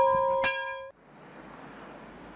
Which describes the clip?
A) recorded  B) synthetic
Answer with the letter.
A